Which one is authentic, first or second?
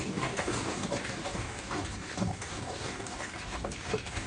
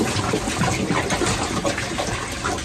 second